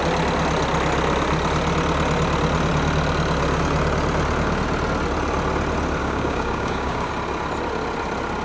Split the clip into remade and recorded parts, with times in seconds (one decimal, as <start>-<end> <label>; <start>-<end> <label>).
0.0-6.0 recorded; 6.0-7.1 remade; 7.1-8.4 recorded